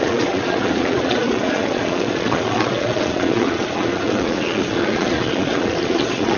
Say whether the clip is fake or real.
fake